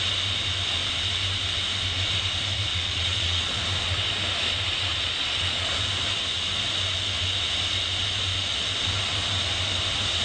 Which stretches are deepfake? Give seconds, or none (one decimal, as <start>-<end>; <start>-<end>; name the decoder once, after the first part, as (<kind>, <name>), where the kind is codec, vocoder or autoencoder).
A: 2.7-3.4 (vocoder, Vocos); 4.9-5.7